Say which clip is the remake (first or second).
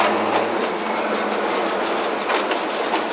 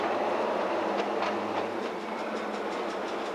second